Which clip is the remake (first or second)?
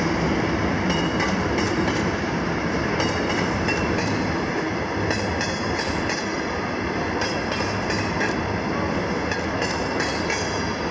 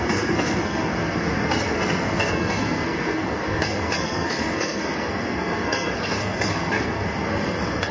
second